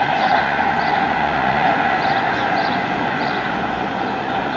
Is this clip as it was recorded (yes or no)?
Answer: no